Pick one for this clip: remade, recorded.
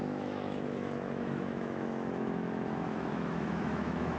remade